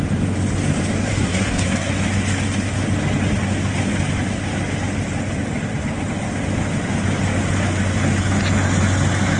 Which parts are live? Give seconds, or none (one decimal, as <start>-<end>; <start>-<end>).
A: 0.0-1.0; 1.9-9.4